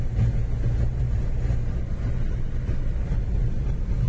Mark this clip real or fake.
real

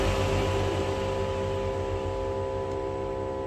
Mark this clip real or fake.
real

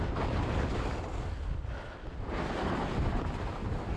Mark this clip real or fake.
real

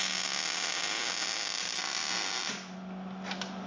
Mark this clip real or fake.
real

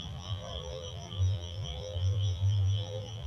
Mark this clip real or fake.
fake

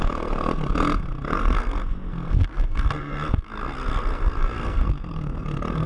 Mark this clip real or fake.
fake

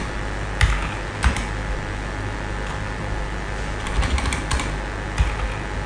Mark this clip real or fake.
real